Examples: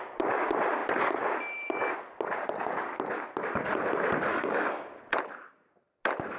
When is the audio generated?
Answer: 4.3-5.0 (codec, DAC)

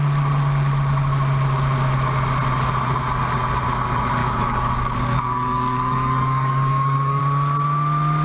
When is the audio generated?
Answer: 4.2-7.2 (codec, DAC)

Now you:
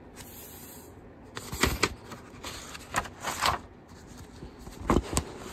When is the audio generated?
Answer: none

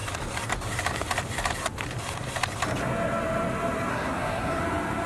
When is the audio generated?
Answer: 3.9-4.6 (codec, SNAC)

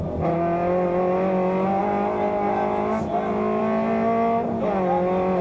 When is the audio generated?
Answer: none

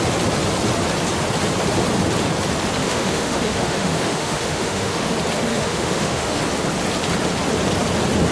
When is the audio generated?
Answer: 2.8-5.1 (autoencoder, DAC-VAE); 5.5-6.4

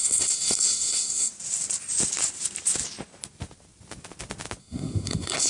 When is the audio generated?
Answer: 0.0-1.3 (codec, SNAC); 4.6-5.5

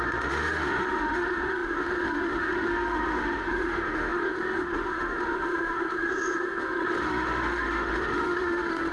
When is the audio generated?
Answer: 0.0-8.9 (autoencoder, DAC-VAE)